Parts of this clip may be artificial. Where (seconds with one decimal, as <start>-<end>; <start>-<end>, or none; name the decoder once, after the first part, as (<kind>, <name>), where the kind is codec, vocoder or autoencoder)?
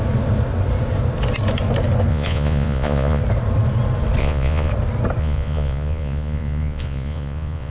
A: 2.1-3.2 (vocoder, Vocos); 4.2-4.7; 5.2-7.7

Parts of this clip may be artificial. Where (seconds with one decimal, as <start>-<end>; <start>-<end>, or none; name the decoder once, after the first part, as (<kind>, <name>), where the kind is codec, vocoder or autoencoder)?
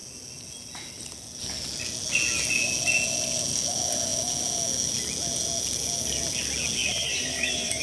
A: none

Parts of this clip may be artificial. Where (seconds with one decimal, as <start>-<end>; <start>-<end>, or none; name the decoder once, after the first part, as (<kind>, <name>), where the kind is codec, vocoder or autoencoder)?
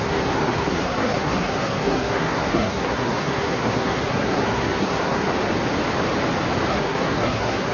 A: 0.0-5.3 (codec, SNAC); 6.7-7.7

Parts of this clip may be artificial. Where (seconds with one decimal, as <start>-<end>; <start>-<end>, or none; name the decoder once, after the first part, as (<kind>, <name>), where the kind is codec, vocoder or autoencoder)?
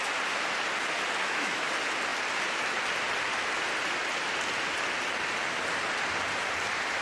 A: 1.2-1.7 (autoencoder, DAC-VAE)